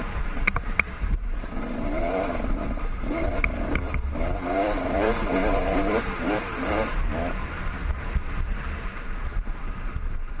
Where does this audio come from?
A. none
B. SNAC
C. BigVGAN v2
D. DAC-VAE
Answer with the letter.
C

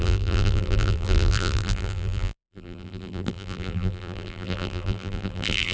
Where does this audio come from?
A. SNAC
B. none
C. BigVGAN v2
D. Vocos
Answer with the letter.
C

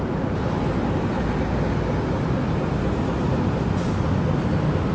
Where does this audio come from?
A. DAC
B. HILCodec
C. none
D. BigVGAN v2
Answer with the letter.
C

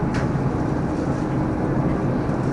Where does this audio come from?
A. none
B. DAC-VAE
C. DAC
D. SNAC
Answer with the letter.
A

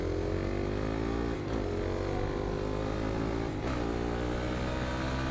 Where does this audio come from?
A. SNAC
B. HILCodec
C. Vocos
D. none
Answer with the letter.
D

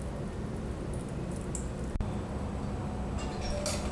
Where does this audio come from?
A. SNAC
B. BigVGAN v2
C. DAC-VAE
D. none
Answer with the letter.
D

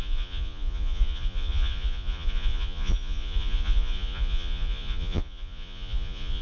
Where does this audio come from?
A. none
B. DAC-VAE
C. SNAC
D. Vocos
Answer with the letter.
D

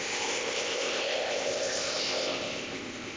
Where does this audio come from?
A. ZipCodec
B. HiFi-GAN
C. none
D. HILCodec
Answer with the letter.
A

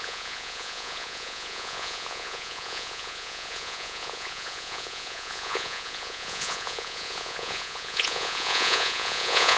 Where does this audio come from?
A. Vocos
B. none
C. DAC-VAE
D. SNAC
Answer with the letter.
A